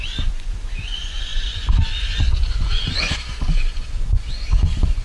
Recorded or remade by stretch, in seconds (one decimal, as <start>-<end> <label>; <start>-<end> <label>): 0.0-5.0 remade